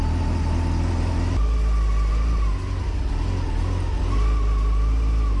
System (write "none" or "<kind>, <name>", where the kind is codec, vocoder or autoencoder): none